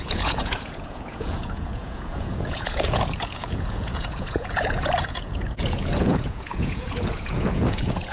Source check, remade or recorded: remade